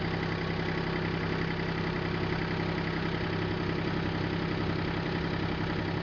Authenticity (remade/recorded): recorded